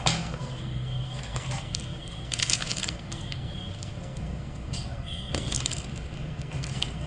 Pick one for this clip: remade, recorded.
remade